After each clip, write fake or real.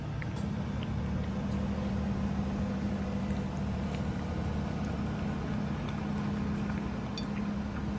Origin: real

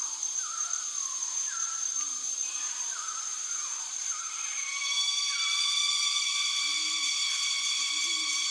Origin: fake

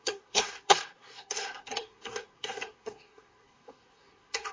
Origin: fake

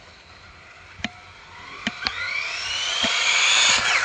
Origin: real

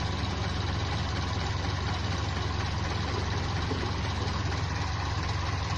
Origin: real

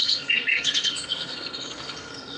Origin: fake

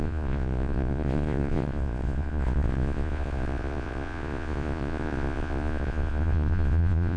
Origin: fake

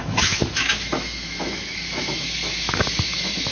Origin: fake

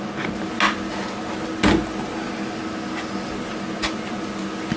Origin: real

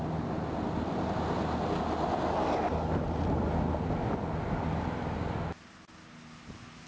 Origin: real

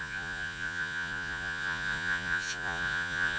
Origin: fake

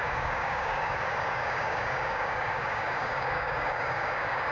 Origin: fake